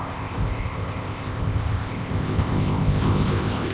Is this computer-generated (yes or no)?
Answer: yes